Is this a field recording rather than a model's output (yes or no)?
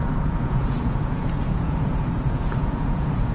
no